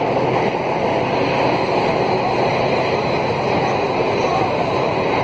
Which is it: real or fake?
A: real